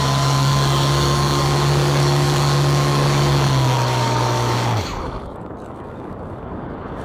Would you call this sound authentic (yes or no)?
no